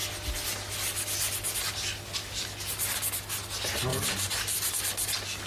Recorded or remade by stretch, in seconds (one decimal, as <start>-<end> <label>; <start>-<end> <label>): 0.0-3.9 recorded; 3.9-4.7 remade; 4.7-5.5 recorded